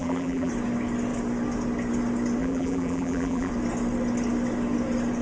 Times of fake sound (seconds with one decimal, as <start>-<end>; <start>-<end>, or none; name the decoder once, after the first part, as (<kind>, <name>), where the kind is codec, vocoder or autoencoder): 0.0-0.5 (vocoder, BigVGAN v2); 2.4-3.5